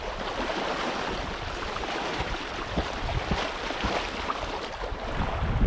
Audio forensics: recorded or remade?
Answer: recorded